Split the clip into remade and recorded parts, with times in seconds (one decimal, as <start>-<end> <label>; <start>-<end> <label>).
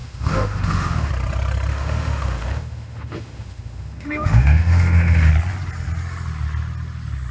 0.0-1.1 remade; 1.1-1.7 recorded; 1.7-5.3 remade; 5.3-7.3 recorded